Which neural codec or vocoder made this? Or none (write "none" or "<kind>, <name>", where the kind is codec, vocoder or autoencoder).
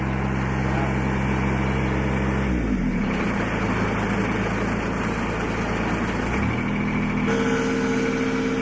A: none